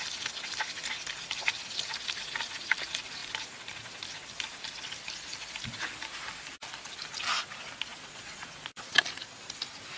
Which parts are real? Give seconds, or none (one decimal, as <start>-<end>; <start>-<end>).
0.0-7.9; 9.0-10.0